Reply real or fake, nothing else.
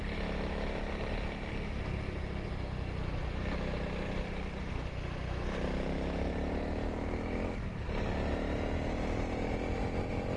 real